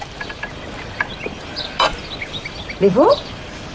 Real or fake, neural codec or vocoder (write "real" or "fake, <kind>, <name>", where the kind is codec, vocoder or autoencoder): fake, vocoder, BigVGAN v2